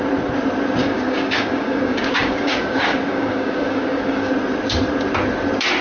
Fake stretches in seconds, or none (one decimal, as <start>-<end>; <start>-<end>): 0.8-4.3